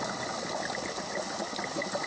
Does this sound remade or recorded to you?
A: recorded